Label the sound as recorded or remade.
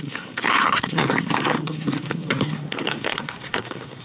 remade